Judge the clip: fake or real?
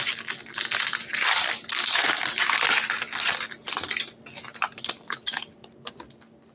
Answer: real